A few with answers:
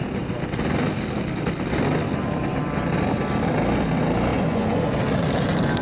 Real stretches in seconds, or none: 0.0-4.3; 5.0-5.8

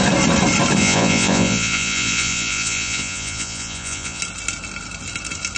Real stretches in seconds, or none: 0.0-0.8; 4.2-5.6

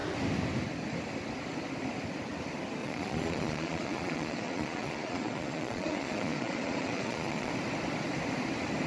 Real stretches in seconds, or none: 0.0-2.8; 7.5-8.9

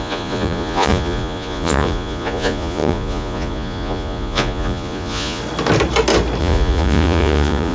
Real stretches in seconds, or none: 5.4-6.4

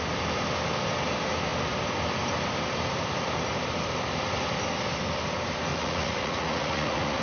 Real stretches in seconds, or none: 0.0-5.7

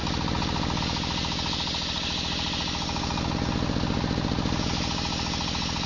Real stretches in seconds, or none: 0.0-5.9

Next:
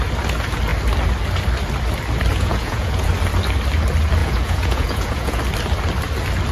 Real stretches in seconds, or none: 0.0-2.3; 3.1-4.2; 5.4-6.5